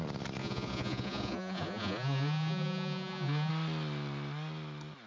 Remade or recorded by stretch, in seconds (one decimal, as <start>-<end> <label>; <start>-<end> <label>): 0.0-0.4 recorded; 0.4-3.5 remade; 3.5-5.1 recorded